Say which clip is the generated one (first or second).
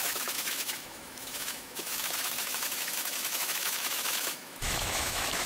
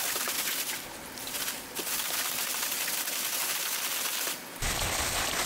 first